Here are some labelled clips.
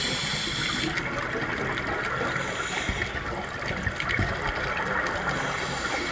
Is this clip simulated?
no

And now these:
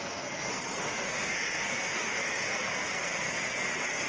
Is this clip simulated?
yes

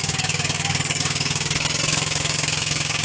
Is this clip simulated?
yes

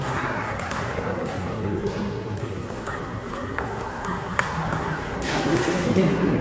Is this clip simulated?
yes